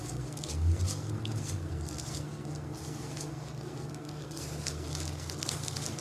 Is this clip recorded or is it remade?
remade